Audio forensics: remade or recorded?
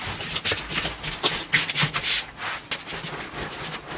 recorded